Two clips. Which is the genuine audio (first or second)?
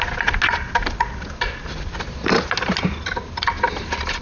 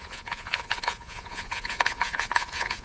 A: first